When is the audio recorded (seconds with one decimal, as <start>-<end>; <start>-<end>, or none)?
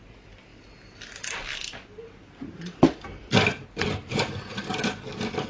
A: 0.0-5.5